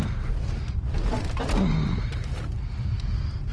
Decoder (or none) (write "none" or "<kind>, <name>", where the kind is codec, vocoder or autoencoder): none